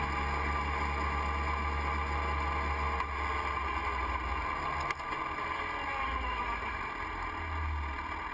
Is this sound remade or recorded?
recorded